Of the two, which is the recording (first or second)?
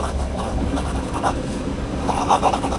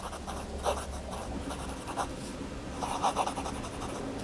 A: second